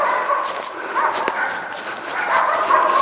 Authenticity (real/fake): real